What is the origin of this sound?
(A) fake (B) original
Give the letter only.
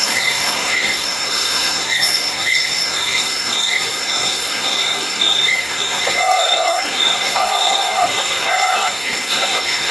A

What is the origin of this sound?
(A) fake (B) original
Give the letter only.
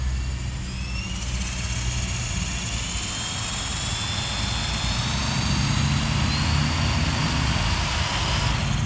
B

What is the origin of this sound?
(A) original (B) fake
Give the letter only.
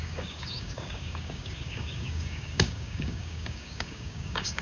B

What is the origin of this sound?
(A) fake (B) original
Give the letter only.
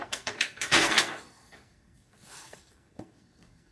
A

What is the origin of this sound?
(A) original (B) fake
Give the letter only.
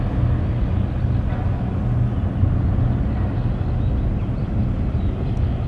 A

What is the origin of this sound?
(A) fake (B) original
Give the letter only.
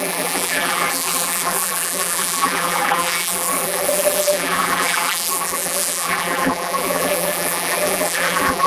A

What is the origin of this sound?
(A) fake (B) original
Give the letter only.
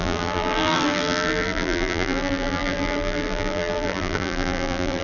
A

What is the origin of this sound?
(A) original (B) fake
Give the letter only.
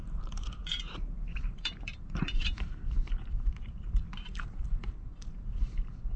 B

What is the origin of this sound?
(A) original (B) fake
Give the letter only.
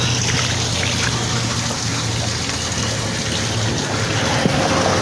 A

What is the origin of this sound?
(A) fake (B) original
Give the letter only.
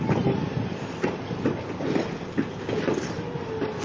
B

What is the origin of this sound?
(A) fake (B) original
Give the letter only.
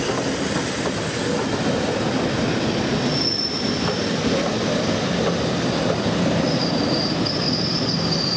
B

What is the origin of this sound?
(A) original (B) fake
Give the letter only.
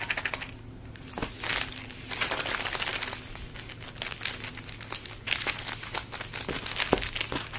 A